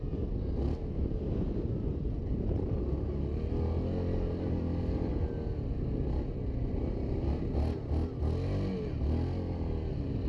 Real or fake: real